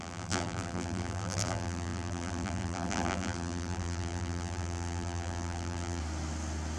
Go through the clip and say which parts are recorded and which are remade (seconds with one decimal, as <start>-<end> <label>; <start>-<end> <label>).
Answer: 0.0-6.0 remade; 6.0-6.8 recorded